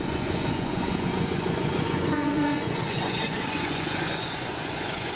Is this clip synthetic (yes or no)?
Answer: yes